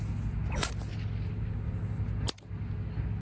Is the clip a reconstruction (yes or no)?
no